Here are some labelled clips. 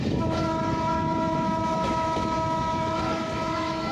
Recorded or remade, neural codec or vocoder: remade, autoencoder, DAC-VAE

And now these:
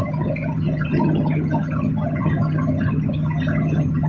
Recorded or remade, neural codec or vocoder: remade, vocoder, HiFi-GAN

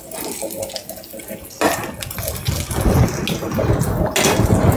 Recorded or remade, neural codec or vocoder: recorded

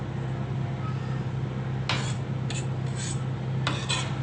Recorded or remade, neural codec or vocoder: recorded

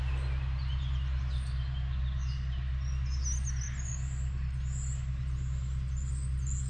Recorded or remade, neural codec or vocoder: recorded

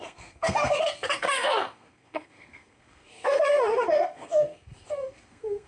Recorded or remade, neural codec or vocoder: remade, codec, SNAC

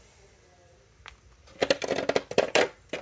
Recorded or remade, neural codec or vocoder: recorded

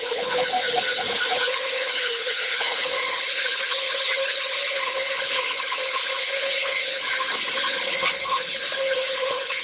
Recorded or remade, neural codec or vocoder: remade, codec, HILCodec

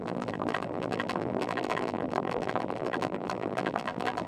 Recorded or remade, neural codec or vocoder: remade, vocoder, BigVGAN v2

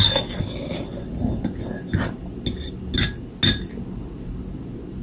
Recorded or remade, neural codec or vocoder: recorded